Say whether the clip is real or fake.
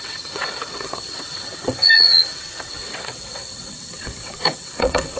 fake